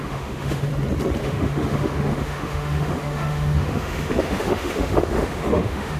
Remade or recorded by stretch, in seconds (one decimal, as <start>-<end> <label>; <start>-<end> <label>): 0.0-0.7 remade; 0.7-1.2 recorded; 1.2-6.0 remade